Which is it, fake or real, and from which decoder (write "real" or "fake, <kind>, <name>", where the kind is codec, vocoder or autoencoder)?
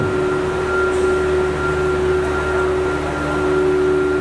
real